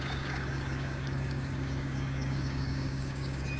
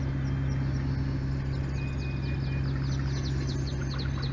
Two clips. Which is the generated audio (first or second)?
first